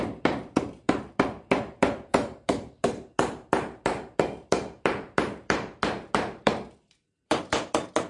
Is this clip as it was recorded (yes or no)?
no